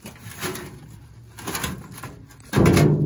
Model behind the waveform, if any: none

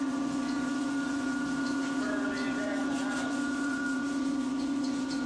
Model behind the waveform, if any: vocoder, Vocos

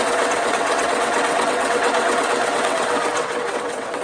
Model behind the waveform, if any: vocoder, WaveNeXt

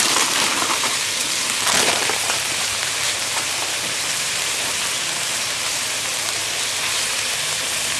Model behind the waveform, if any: vocoder, BigVGAN v2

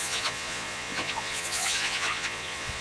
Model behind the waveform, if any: vocoder, Vocos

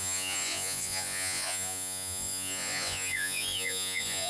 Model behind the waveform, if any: vocoder, Vocos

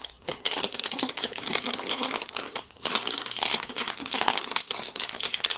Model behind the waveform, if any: codec, SNAC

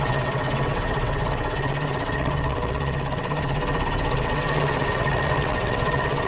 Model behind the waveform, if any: vocoder, WaveNeXt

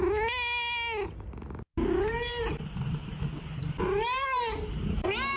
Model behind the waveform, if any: none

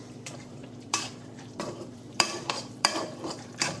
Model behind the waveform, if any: vocoder, BigVGAN v2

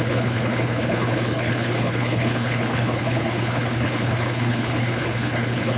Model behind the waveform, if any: codec, HILCodec